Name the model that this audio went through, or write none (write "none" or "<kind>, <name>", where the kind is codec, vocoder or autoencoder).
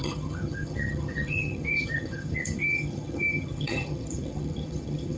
vocoder, HiFi-GAN